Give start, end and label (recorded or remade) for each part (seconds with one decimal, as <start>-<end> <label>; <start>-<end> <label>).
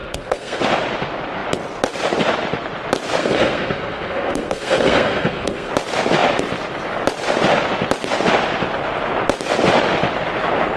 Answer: 0.0-0.6 remade; 0.6-3.2 recorded; 3.2-5.7 remade; 5.7-10.8 recorded